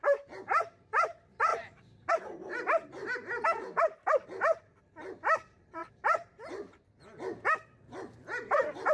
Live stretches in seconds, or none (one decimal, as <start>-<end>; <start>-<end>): 0.0-1.5; 2.1-5.8; 7.0-8.9